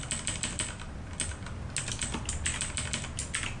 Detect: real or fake real